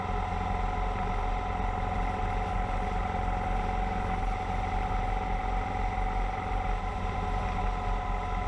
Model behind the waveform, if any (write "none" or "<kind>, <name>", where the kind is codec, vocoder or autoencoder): none